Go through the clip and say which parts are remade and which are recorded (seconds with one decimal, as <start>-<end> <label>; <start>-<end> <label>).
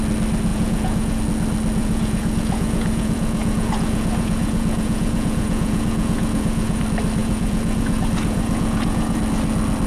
0.0-0.5 recorded; 0.5-1.2 remade; 1.2-1.8 recorded; 1.8-6.8 remade; 6.8-7.2 recorded; 7.2-9.2 remade; 9.2-9.9 recorded